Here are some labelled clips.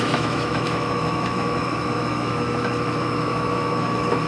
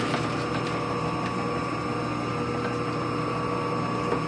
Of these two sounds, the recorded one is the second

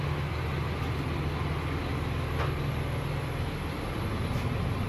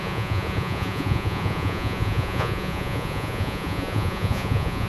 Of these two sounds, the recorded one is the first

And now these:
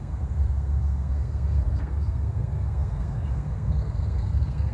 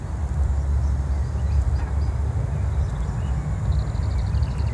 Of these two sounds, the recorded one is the second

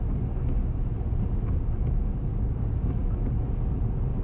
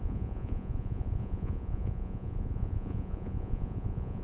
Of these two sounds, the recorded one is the first